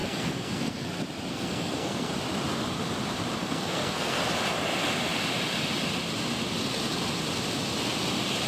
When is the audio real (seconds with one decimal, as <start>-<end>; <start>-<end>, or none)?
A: 0.9-1.3; 2.1-3.4; 4.2-8.5